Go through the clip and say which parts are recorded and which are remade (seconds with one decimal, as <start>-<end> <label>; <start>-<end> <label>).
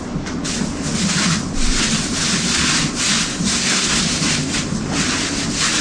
0.0-3.3 recorded; 3.3-4.0 remade; 4.0-5.8 recorded